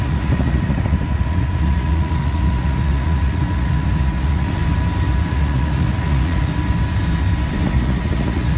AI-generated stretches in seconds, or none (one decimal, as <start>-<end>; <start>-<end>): 0.0-4.6; 5.3-6.5; 7.6-8.6